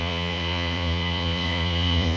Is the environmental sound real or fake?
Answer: fake